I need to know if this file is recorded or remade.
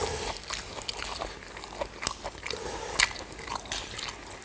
recorded